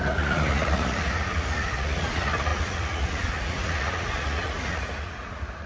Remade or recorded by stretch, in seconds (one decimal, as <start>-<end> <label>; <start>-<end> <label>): 0.0-5.7 remade

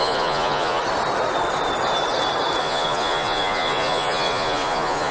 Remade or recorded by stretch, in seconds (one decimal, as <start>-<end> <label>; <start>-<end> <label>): 0.0-0.8 remade; 0.8-2.6 recorded; 2.6-5.1 remade

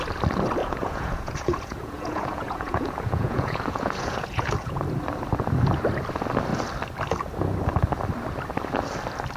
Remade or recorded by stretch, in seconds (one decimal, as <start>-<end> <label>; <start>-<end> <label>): 0.0-0.6 recorded; 0.6-4.8 remade; 4.8-9.4 recorded

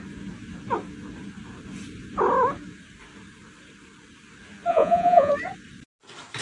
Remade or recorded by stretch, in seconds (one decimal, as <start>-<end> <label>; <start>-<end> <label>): 0.0-4.7 recorded; 4.7-5.3 remade; 5.3-6.4 recorded